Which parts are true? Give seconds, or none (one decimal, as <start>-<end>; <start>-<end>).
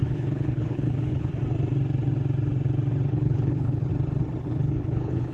1.3-3.1; 3.9-4.4